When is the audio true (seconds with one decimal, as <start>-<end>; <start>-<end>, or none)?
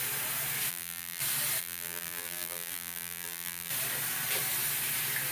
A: 0.0-0.7; 1.2-1.6; 3.7-5.3